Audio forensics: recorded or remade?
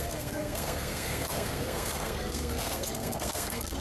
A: remade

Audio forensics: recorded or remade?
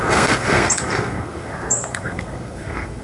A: remade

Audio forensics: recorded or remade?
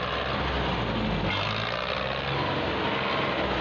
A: recorded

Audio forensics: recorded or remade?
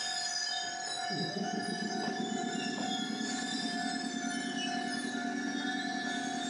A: recorded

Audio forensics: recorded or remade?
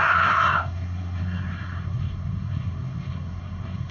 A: remade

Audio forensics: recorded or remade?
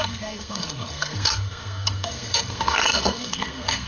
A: remade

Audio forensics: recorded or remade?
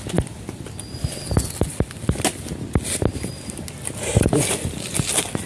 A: recorded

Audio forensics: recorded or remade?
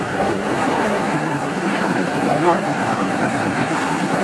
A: remade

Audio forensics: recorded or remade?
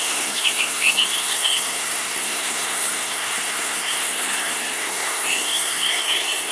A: remade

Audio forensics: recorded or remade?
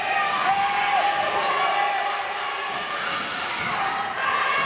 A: recorded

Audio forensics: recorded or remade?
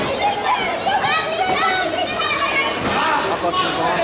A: recorded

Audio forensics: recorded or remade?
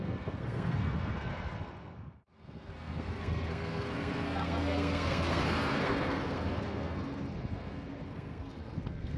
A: remade